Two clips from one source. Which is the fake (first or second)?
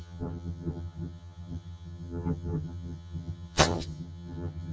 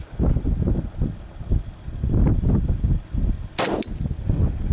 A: first